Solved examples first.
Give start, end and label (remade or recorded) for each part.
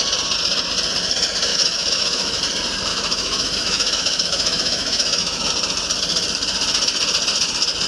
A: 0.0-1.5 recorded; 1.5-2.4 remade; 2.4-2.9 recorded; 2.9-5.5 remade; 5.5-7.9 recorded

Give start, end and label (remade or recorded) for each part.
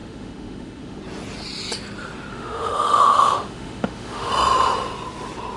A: 0.0-1.0 remade; 1.0-2.3 recorded; 2.3-4.3 remade; 4.3-5.6 recorded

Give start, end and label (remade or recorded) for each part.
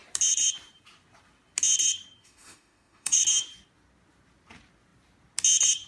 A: 0.0-2.2 recorded; 2.2-3.2 remade; 3.2-5.9 recorded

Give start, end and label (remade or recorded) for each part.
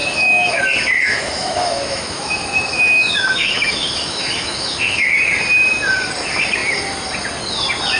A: 0.0-0.6 remade; 0.6-1.1 recorded; 1.1-5.1 remade; 5.1-8.0 recorded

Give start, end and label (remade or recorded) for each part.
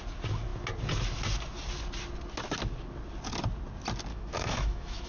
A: 0.0-4.1 recorded; 4.1-5.1 remade